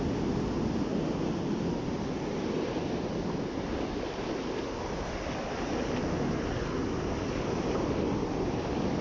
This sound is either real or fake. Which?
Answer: real